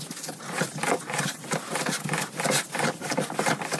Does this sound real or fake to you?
real